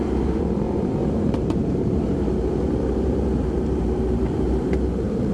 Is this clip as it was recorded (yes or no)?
no